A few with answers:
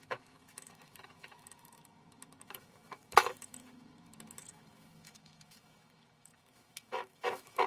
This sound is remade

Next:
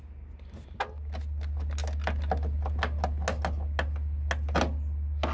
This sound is recorded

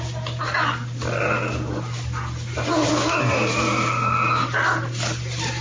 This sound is recorded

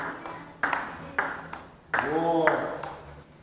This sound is recorded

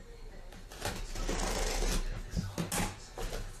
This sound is recorded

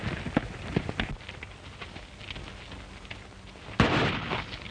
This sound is recorded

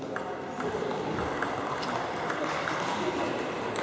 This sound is recorded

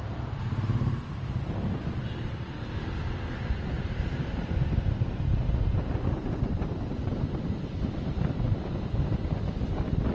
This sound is recorded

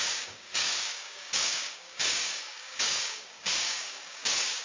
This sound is remade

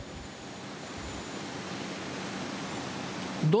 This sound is recorded